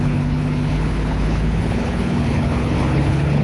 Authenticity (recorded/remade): remade